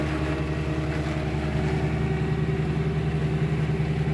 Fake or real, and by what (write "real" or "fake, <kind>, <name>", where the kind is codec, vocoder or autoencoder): real